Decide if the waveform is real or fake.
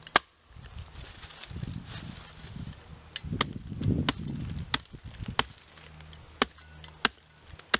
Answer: real